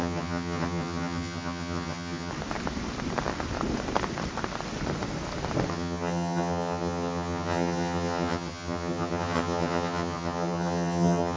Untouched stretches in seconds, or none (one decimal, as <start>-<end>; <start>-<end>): 2.3-5.7